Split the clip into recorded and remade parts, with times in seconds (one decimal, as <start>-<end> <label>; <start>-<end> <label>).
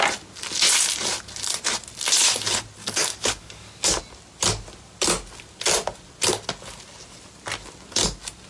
0.0-2.8 recorded; 2.8-4.0 remade; 4.0-8.5 recorded